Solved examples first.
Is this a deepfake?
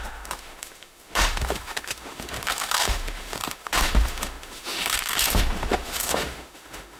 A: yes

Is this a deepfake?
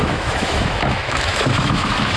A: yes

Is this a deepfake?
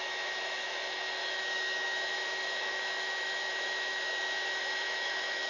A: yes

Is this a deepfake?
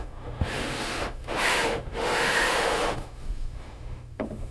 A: yes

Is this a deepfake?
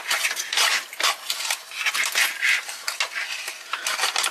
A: no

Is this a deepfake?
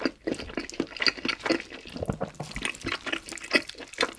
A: no